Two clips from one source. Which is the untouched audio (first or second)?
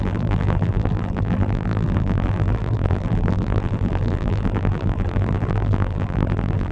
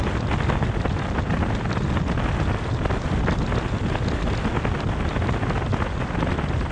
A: second